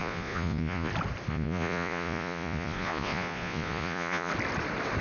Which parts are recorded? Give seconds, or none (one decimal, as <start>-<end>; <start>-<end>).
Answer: 0.9-1.3; 4.3-5.0